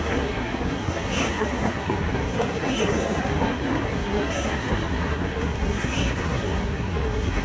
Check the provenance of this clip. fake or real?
fake